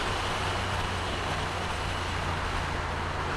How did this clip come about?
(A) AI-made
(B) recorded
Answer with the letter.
B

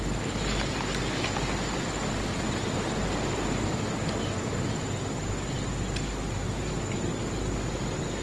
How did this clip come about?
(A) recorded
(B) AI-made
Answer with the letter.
A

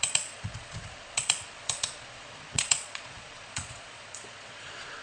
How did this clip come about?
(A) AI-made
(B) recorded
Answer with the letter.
A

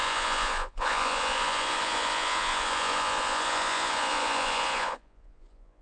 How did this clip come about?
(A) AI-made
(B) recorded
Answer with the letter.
A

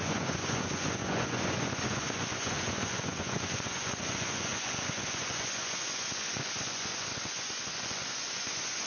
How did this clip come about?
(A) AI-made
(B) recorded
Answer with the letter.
A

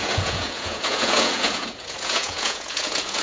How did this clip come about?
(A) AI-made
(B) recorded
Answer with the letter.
A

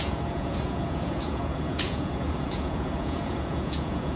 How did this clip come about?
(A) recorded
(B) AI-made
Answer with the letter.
B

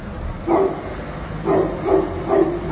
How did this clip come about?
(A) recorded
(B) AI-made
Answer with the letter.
A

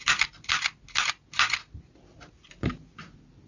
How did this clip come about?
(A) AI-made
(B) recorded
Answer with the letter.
B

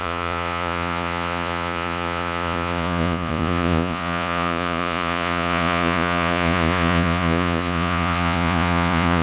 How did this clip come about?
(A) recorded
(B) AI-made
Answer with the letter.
B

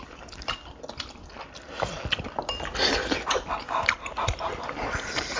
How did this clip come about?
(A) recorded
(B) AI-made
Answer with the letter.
A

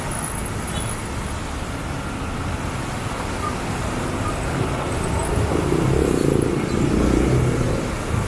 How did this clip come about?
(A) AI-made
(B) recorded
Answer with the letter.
B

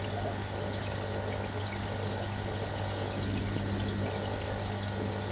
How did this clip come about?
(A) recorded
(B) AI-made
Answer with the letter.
A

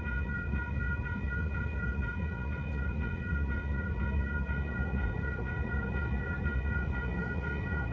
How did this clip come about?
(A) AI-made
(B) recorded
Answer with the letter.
A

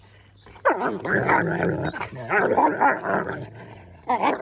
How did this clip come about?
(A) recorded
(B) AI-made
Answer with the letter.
A